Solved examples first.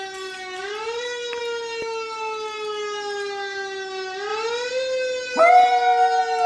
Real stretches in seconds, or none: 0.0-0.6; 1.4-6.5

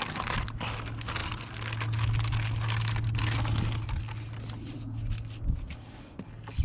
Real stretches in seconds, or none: 0.0-6.6

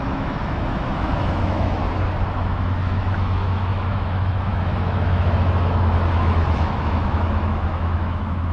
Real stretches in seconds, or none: 1.8-2.3

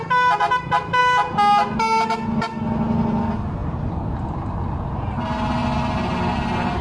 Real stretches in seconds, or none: 0.0-6.8

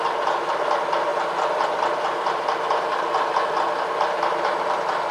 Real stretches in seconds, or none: 0.0-5.1